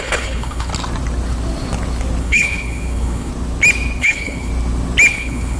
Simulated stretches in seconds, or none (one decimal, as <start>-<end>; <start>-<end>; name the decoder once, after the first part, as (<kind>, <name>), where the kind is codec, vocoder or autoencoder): 0.0-0.7 (codec, HILCodec); 2.2-3.3; 4.0-4.5; 5.1-5.6